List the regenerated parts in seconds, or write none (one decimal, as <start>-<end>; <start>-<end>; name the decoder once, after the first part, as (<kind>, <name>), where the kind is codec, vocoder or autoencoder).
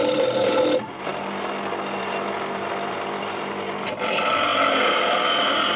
none